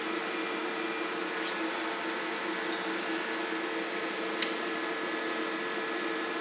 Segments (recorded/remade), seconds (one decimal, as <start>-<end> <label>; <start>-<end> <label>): 0.0-6.4 recorded